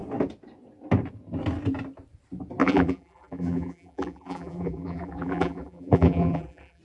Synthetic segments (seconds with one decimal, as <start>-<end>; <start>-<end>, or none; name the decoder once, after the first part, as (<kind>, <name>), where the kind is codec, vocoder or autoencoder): 2.6-6.8 (vocoder, BigVGAN v2)